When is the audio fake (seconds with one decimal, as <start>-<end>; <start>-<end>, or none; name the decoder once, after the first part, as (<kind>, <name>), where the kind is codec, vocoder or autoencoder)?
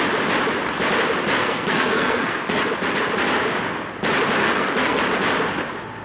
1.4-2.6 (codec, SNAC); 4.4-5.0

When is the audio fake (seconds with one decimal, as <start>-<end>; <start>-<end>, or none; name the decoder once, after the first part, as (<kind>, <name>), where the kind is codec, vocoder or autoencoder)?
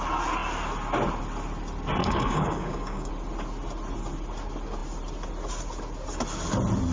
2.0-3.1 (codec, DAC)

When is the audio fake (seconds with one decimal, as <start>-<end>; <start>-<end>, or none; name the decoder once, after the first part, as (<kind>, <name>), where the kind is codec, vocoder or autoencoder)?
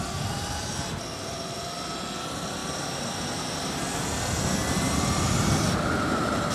none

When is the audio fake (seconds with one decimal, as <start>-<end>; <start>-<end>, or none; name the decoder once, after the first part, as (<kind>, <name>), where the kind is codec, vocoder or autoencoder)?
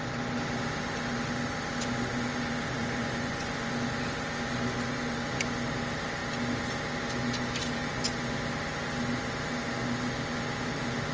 2.8-3.7 (vocoder, Vocos)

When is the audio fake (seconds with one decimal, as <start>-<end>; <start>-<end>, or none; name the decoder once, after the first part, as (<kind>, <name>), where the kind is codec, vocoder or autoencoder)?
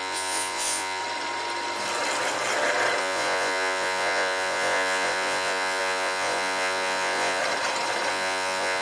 0.0-1.0 (vocoder, Vocos); 3.0-7.4; 8.1-8.8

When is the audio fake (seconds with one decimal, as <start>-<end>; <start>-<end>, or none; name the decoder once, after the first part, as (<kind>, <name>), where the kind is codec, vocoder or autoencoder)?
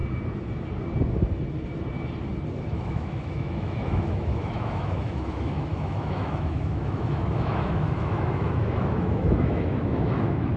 2.6-10.6 (autoencoder, DAC-VAE)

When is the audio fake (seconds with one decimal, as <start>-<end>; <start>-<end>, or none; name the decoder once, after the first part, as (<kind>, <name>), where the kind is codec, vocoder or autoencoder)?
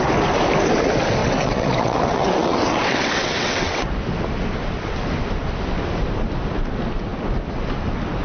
1.2-3.9 (vocoder, WaveNeXt)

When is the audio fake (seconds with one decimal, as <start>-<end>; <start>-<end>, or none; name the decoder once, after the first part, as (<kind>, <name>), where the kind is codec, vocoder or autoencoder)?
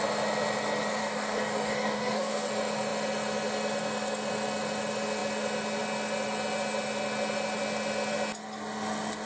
1.0-2.5 (codec, DAC)